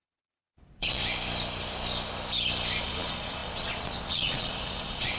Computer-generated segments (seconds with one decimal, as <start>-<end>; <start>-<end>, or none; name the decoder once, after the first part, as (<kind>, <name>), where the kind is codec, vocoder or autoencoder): 0.0-1.0 (vocoder, Vocos); 2.8-5.2